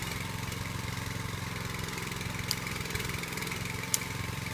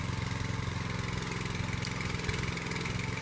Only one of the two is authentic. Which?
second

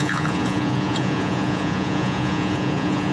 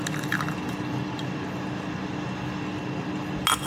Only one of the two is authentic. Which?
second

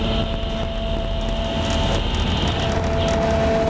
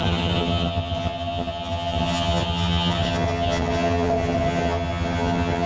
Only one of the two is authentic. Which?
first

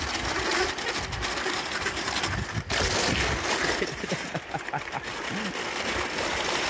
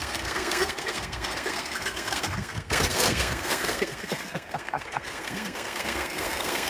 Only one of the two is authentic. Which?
first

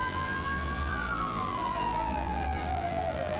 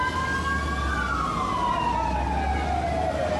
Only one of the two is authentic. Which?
second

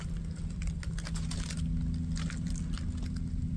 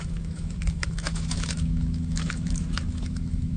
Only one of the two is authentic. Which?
first